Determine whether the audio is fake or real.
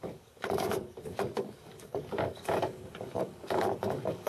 fake